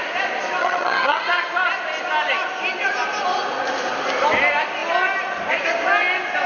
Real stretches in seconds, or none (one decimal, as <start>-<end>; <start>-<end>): 0.0-0.6; 1.2-6.5